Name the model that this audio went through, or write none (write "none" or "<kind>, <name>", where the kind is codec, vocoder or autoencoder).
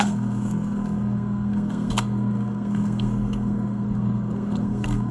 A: codec, SNAC